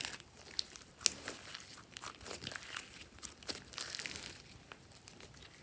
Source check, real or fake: real